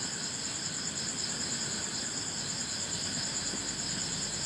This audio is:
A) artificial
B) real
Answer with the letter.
B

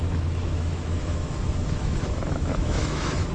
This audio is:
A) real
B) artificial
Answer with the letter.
B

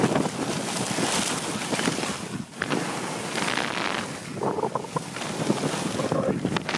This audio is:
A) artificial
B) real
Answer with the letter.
B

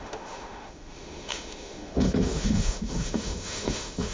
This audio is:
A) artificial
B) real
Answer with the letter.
A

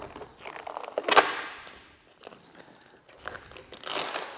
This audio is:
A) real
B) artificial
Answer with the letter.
A